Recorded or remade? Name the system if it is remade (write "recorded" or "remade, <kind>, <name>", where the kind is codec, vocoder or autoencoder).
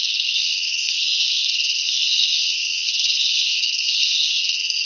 remade, codec, SNAC